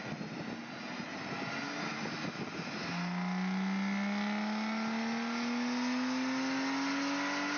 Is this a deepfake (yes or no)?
no